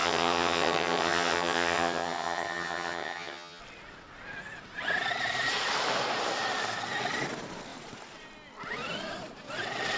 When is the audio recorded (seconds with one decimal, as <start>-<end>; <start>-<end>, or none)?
3.6-10.0